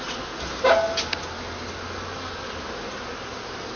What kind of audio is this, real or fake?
real